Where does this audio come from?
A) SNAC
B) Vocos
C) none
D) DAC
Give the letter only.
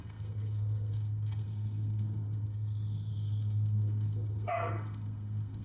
A